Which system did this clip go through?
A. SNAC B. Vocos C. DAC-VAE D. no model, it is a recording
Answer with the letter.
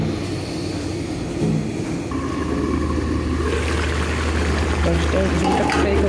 D